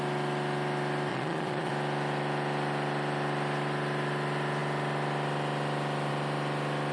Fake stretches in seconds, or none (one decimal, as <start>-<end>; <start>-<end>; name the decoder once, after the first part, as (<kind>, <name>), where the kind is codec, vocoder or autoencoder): 1.1-1.7 (vocoder, Vocos)